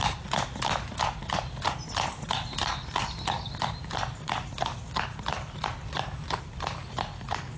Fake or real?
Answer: real